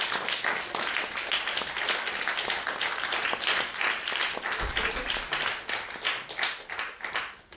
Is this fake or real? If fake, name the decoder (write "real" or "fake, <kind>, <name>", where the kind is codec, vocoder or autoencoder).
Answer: real